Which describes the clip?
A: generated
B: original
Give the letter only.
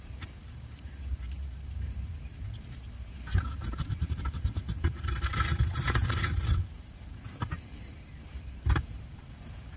A